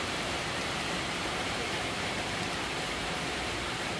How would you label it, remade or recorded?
remade